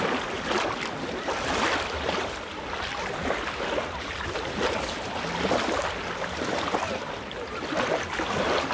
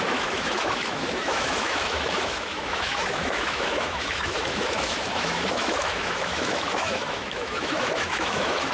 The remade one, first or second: second